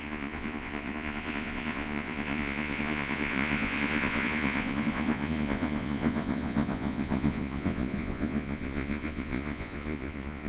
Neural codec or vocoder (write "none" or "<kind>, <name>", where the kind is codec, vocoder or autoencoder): vocoder, Vocos